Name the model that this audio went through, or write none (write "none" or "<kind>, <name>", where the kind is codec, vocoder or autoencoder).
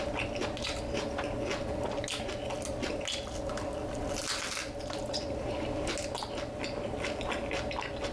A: none